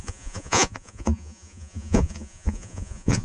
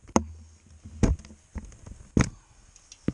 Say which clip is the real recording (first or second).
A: second